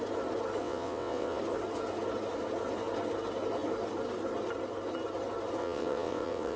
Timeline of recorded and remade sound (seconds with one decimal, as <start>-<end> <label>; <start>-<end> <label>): 0.0-0.6 recorded; 0.6-1.4 remade; 1.4-5.6 recorded; 5.6-6.6 remade